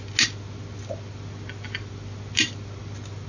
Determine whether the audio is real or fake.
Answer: real